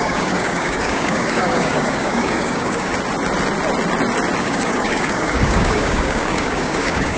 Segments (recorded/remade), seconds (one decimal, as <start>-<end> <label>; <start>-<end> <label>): 0.0-2.9 remade; 2.9-4.4 recorded; 4.4-7.2 remade